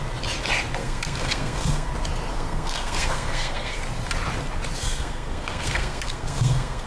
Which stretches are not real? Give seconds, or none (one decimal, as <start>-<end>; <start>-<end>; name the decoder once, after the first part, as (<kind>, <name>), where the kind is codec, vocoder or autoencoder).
0.8-1.9 (codec, SNAC); 2.3-3.8; 4.8-6.9